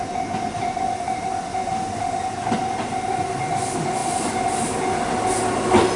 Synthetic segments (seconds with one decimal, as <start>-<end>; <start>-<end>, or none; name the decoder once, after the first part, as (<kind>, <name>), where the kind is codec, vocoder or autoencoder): none